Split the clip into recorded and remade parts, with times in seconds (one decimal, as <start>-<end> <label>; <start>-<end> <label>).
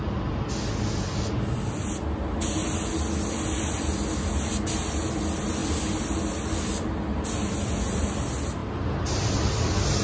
0.0-10.0 recorded